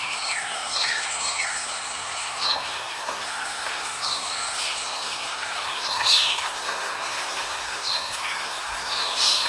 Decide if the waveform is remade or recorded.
remade